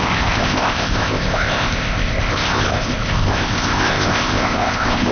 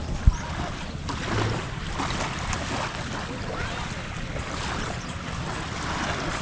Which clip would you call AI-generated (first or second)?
first